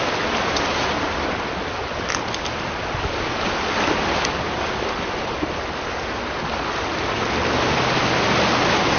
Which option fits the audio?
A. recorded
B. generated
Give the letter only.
A